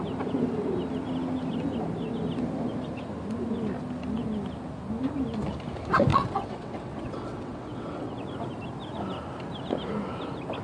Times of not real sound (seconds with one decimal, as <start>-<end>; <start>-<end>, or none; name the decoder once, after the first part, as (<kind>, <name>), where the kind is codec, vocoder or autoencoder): 6.1-8.2 (vocoder, WaveNeXt)